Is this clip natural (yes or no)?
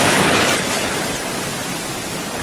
yes